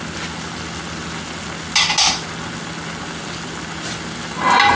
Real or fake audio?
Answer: real